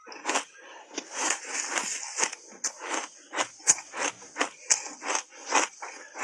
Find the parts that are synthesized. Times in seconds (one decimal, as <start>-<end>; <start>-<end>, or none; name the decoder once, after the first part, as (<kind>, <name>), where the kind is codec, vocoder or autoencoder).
0.8-1.4 (codec, SNAC)